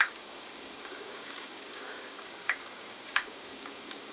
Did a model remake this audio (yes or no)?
yes